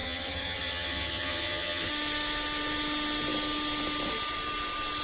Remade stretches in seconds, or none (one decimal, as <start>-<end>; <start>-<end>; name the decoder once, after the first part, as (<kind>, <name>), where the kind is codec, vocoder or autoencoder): 0.0-1.9 (vocoder, HiFi-GAN)